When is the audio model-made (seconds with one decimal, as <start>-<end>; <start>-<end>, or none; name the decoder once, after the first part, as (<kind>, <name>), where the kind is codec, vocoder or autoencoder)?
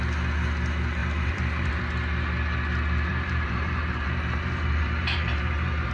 1.0-1.8 (vocoder, BigVGAN v2); 3.1-5.9